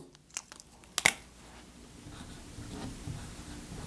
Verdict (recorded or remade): recorded